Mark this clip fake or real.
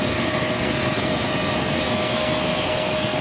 fake